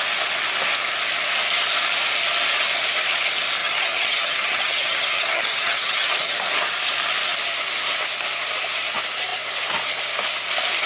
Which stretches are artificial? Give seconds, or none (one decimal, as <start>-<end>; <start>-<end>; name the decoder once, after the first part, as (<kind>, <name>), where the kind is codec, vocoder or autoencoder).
3.6-6.3 (vocoder, HiFi-GAN)